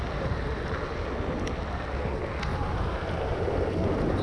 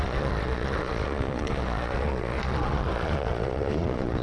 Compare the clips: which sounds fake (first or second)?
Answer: second